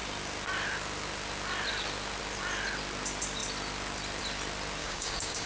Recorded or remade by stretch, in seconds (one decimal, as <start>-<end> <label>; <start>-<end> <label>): 0.0-4.8 recorded; 4.8-5.5 remade